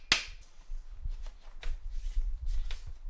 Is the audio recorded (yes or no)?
yes